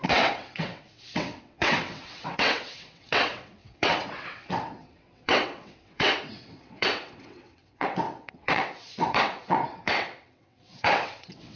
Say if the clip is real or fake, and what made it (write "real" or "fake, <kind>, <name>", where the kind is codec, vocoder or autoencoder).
fake, vocoder, WaveNeXt